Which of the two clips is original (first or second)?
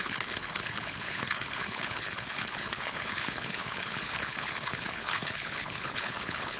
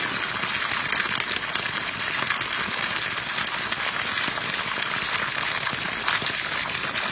second